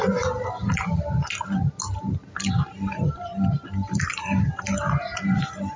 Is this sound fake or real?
real